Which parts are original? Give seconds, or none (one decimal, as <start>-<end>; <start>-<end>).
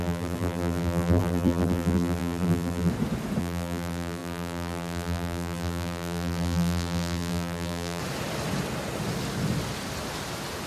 2.9-3.4; 8.0-10.7